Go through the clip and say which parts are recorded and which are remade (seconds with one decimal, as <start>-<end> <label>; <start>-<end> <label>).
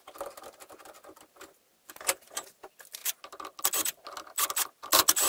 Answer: 0.0-5.3 recorded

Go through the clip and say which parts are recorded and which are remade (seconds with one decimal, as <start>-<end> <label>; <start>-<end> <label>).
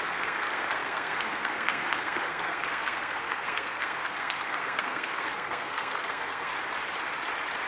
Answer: 0.0-6.5 remade; 6.5-7.7 recorded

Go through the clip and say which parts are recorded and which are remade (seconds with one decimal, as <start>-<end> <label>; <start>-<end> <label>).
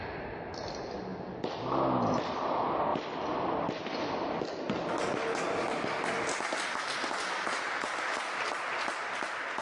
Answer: 0.0-9.6 recorded